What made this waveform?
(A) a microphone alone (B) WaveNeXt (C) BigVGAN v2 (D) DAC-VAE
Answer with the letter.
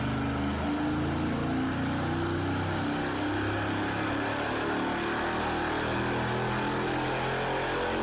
A